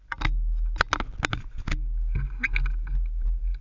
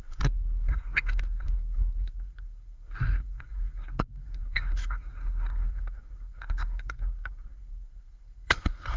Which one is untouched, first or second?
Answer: first